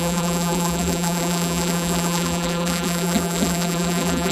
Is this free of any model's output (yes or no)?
no